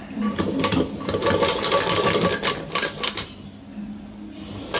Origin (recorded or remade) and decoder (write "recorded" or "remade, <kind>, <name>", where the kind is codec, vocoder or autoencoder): recorded